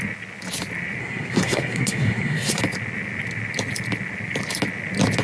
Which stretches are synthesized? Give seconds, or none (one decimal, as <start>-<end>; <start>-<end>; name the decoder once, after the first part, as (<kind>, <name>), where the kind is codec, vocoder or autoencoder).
1.0-2.6 (codec, SNAC)